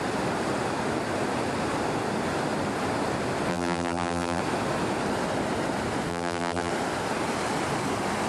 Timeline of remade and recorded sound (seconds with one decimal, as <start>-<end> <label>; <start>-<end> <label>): 0.0-3.5 recorded; 3.5-4.4 remade; 4.4-6.1 recorded; 6.1-6.7 remade; 6.7-8.3 recorded